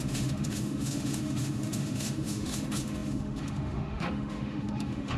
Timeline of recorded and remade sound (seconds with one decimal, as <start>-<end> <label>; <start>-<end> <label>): 0.0-5.2 remade